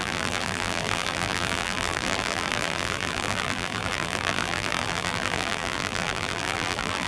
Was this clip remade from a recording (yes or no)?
yes